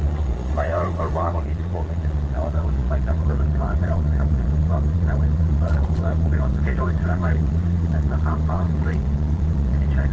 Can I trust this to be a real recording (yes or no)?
no